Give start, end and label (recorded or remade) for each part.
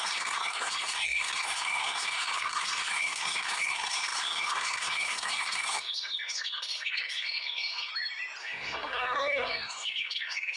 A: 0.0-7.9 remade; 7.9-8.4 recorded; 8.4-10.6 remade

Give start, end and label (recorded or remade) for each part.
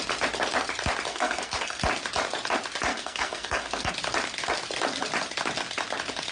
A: 0.0-1.1 recorded; 1.1-1.8 remade; 1.8-2.9 recorded; 2.9-3.9 remade; 3.9-6.3 recorded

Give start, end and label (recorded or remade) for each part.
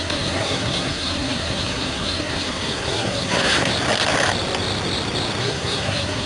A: 0.0-3.7 remade; 3.7-5.4 recorded; 5.4-6.3 remade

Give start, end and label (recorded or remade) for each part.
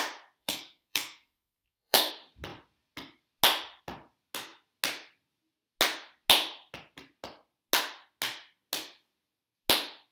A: 0.0-0.4 recorded; 0.4-2.1 remade; 2.1-10.1 recorded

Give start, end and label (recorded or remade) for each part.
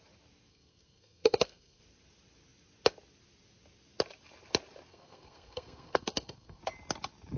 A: 0.0-0.5 recorded; 0.5-1.8 remade; 1.8-4.9 recorded; 4.9-6.6 remade; 6.6-7.4 recorded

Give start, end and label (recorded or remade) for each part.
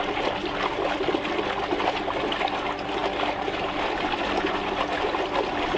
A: 0.0-5.8 recorded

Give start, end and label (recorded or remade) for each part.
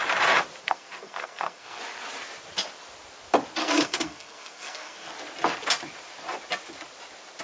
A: 0.0-0.6 recorded; 0.6-1.8 remade; 1.8-3.6 recorded; 3.6-5.1 remade; 5.1-7.4 recorded